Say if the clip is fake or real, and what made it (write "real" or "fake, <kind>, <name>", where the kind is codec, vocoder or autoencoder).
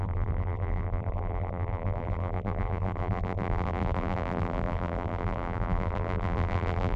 fake, vocoder, BigVGAN v2